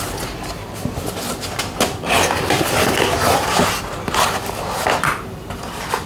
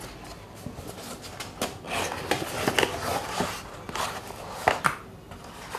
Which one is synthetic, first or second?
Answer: first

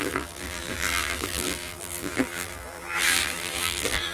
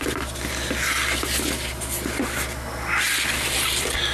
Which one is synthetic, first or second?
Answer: first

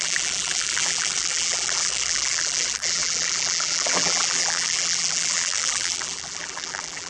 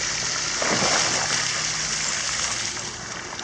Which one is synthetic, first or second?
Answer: first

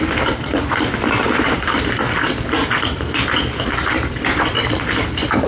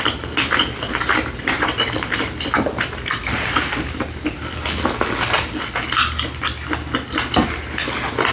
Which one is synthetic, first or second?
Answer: first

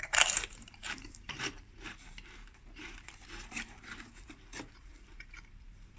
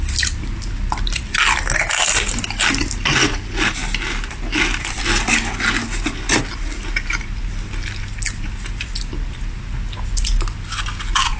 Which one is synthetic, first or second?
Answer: first